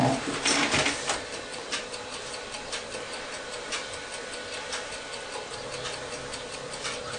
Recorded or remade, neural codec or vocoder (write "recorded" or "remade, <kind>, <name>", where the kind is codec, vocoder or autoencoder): recorded